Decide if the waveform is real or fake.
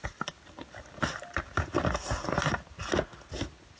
real